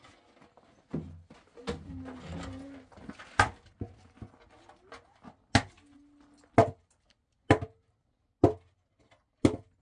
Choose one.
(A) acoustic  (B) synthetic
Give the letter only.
A